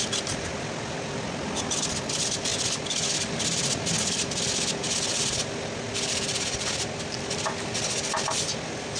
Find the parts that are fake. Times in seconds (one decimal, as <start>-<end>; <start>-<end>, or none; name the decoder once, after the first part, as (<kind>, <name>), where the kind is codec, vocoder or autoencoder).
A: none